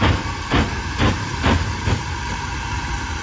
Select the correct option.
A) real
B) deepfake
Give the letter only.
A